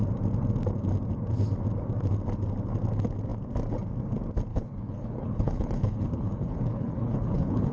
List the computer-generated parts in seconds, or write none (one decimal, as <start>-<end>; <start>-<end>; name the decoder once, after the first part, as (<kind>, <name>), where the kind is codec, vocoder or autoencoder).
4.5-7.7 (codec, HILCodec)